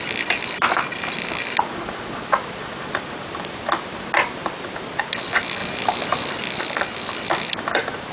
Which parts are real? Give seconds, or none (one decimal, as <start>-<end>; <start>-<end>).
0.0-8.1